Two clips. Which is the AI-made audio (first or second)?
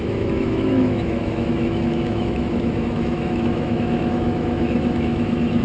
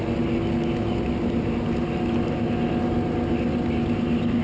first